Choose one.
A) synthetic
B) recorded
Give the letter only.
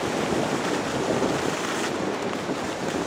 B